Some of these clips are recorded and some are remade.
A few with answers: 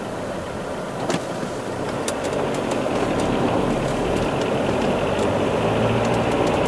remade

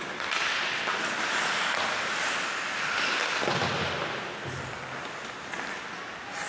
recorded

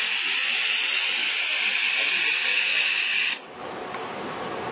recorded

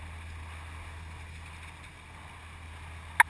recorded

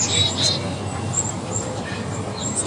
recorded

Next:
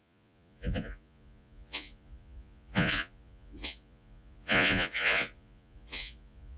remade